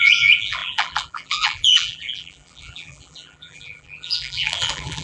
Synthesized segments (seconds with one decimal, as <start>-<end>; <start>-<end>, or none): 0.0-5.0